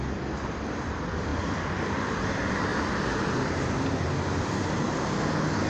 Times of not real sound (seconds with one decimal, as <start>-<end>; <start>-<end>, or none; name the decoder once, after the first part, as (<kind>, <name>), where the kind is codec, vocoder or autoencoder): none